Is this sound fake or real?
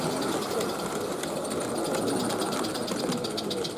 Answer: real